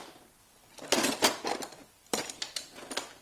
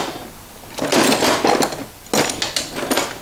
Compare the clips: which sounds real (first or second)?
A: second